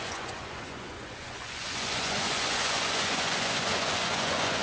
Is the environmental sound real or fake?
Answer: fake